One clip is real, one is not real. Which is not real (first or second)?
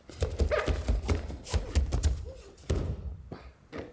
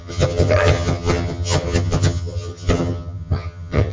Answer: second